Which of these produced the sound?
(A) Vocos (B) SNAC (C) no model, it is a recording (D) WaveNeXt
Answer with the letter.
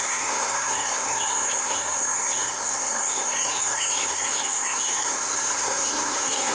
B